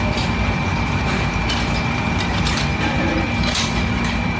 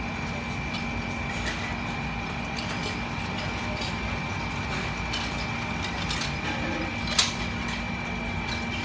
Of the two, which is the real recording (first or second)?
second